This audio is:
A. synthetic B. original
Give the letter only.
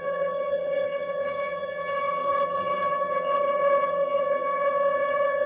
A